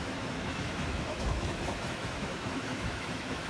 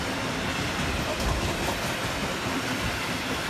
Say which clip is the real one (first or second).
second